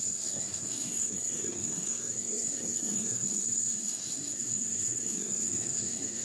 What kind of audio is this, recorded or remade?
remade